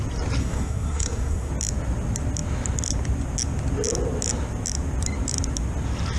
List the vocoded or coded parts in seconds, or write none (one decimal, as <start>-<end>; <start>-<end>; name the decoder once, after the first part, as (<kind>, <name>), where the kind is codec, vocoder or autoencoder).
0.4-1.5 (codec, SNAC)